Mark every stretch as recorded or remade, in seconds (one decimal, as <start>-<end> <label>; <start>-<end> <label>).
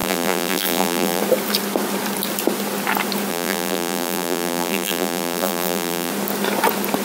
0.0-1.2 remade; 1.2-3.3 recorded; 3.3-6.1 remade; 6.1-7.0 recorded